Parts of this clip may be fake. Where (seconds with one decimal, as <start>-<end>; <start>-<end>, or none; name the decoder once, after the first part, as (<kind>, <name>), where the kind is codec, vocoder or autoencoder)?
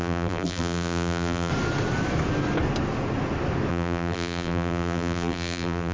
0.0-1.5 (vocoder, BigVGAN v2); 3.7-5.9